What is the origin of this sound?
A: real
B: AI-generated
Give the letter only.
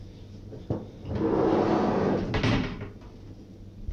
A